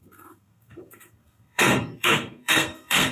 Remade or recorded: remade